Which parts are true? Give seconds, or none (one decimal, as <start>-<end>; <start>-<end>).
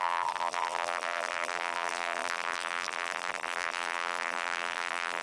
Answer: none